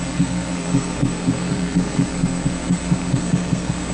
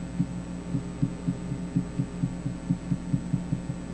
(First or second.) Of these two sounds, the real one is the second